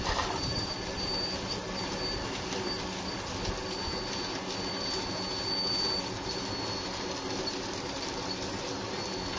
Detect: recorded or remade recorded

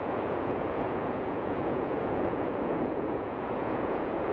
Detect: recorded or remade remade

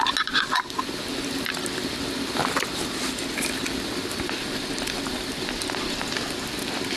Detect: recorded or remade recorded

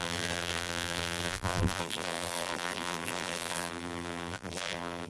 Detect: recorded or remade remade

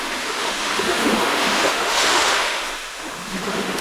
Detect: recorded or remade remade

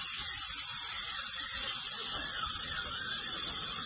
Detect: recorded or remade recorded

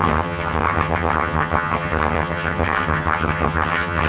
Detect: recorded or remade remade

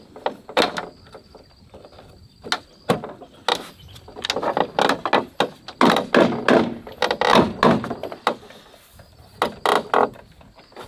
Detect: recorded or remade recorded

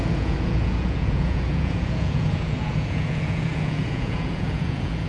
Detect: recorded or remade remade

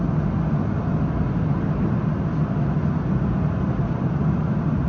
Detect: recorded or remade recorded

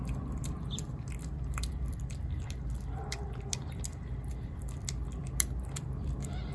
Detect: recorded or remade remade